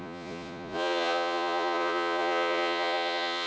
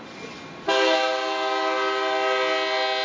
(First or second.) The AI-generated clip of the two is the first